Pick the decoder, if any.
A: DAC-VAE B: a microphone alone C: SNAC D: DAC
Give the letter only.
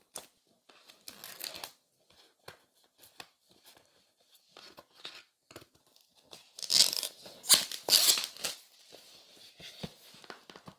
B